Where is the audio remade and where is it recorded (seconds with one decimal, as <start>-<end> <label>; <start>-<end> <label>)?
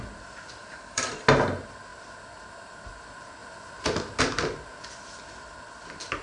0.0-0.6 recorded; 0.6-1.1 remade; 1.1-6.2 recorded